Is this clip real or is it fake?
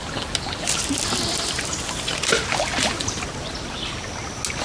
real